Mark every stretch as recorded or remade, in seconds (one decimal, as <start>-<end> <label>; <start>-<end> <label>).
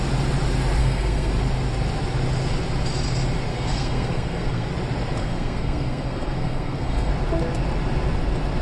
0.0-0.8 recorded; 0.8-1.3 remade; 1.3-3.5 recorded; 3.5-4.7 remade; 4.7-5.2 recorded; 5.2-7.1 remade; 7.1-8.6 recorded